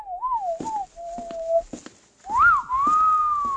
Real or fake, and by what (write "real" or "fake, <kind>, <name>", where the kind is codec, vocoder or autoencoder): real